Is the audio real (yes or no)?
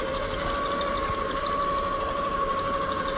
no